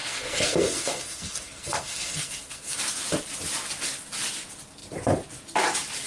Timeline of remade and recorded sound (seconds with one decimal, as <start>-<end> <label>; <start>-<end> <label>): 0.0-2.8 remade; 2.8-6.1 recorded